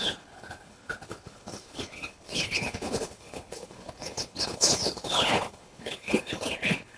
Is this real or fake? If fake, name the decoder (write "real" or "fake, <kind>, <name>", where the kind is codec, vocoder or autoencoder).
fake, codec, HILCodec